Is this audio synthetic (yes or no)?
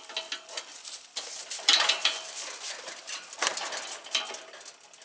no